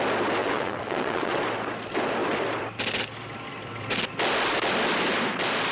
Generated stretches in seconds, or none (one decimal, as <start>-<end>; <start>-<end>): 0.4-1.4